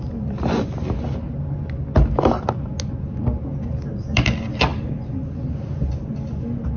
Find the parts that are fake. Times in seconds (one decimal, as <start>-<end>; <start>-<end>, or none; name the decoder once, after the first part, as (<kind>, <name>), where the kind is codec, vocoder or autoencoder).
none